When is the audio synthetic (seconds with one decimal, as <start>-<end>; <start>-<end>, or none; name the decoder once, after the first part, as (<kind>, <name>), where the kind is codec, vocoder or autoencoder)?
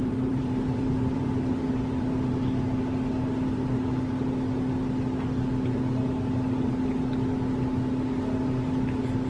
0.0-2.3 (vocoder, BigVGAN v2)